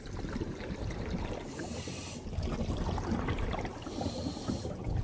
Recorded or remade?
remade